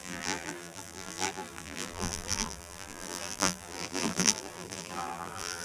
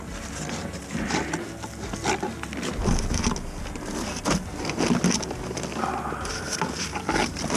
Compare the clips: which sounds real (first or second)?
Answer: second